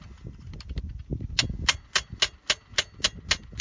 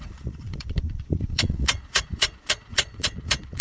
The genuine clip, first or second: first